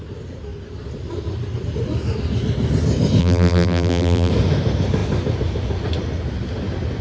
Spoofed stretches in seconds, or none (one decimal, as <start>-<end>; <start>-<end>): 3.2-4.3